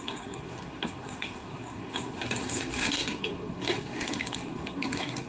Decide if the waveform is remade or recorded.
remade